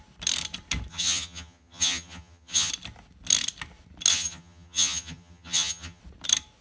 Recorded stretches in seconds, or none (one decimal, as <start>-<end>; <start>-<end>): 0.0-0.9; 2.7-4.1; 6.0-6.6